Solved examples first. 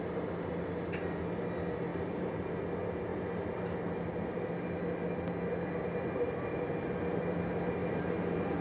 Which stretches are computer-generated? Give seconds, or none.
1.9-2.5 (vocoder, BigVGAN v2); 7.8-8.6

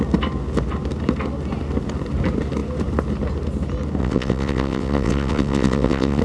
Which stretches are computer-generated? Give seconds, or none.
4.0-6.2 (vocoder, WaveNeXt)

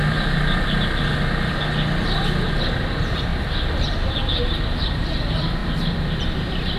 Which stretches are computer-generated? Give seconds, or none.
0.0-0.4 (vocoder, BigVGAN v2); 2.7-3.3; 4.5-5.6; 6.2-6.8

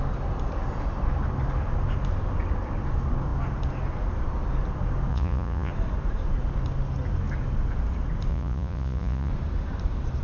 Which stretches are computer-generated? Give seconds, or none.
5.1-5.7 (vocoder, Vocos); 8.3-9.3